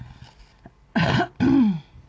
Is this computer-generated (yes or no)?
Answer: no